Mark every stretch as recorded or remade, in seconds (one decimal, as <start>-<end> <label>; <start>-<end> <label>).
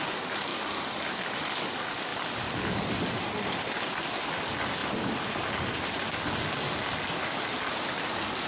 0.0-0.5 recorded; 0.5-1.4 remade; 1.4-2.1 recorded; 2.1-2.8 remade; 2.8-4.8 recorded; 4.8-6.5 remade; 6.5-8.5 recorded